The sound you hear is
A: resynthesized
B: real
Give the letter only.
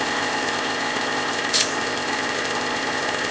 A